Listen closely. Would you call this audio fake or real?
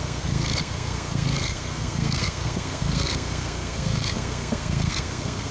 fake